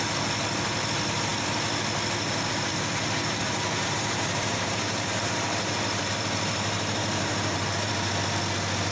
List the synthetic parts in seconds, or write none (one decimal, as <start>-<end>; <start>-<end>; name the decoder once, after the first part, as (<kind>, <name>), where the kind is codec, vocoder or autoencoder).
2.7-7.9 (vocoder, BigVGAN v2)